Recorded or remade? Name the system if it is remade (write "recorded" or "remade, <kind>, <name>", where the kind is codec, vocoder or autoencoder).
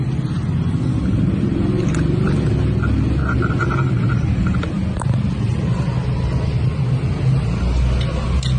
recorded